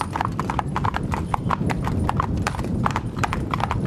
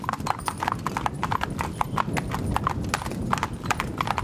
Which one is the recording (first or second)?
second